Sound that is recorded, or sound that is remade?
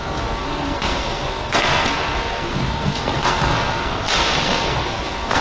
remade